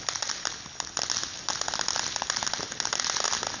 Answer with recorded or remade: recorded